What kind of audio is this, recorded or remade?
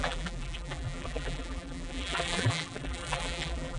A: remade